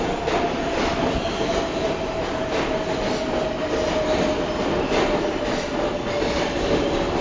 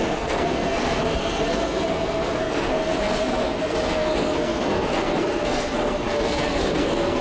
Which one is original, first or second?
first